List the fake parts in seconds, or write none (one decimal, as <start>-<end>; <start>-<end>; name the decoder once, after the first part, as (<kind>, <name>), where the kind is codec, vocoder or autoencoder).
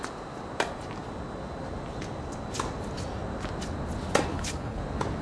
4.3-4.8 (codec, HILCodec)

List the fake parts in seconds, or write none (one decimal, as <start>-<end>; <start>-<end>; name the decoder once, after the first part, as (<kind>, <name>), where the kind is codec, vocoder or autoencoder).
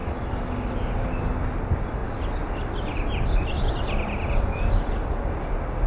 none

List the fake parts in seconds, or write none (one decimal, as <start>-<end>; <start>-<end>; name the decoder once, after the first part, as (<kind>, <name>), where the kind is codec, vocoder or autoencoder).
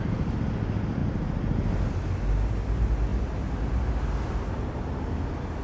none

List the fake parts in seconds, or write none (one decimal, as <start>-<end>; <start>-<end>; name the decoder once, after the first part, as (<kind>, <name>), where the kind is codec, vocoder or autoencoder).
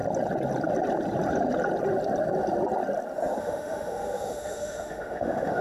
3.4-5.6 (autoencoder, DAC-VAE)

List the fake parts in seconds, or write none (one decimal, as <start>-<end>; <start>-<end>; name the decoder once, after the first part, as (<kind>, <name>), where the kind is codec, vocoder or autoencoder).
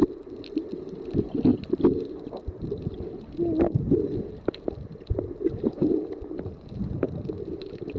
none